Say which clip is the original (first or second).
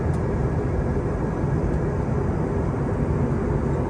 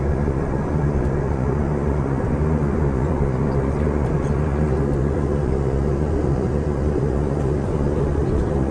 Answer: first